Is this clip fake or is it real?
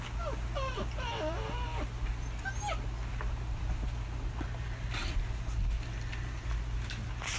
real